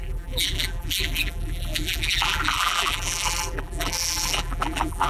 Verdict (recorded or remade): remade